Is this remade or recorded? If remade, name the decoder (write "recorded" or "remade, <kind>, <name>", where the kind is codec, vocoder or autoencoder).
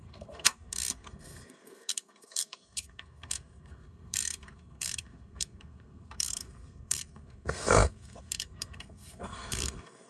remade, codec, SNAC